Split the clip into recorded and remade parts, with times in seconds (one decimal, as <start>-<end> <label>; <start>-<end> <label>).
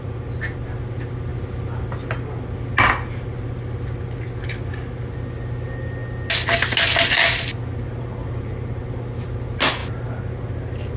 0.0-11.0 recorded